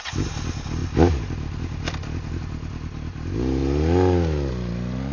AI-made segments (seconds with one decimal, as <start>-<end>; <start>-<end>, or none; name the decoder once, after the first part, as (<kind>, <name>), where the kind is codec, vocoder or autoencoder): none